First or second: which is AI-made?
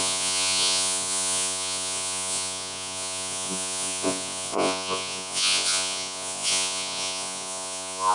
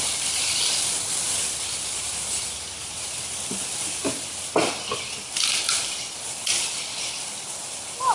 first